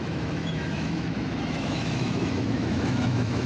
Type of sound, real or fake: fake